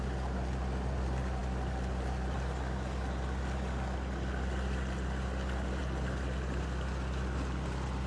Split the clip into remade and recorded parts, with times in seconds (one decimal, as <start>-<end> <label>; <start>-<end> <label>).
0.0-8.1 recorded